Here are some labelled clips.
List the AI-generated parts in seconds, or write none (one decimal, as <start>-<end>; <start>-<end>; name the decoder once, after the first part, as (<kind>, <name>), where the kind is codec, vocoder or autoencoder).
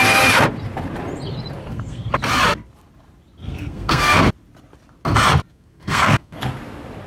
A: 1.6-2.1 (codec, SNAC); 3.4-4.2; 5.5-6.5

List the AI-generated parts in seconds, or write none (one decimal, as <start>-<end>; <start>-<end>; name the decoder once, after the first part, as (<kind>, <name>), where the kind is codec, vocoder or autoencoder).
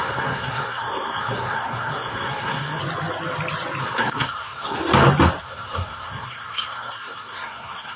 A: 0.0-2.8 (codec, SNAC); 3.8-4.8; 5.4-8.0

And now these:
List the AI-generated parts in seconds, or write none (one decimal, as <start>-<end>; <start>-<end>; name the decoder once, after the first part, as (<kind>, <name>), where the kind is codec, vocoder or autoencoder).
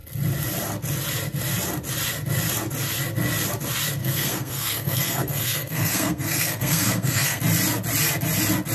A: 4.0-7.4 (codec, SNAC)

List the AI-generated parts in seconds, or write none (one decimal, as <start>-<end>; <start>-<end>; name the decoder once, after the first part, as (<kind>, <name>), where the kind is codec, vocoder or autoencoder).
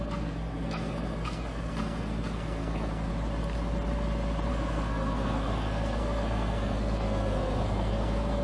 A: 0.0-3.1 (codec, SNAC); 4.5-8.4